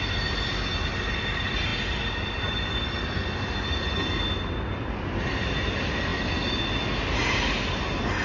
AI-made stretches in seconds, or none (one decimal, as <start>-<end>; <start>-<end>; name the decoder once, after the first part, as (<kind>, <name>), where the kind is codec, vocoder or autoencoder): none